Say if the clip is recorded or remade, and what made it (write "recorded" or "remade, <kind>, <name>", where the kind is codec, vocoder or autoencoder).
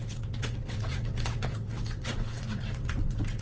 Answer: remade, vocoder, WaveNeXt